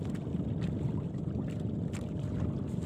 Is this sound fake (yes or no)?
no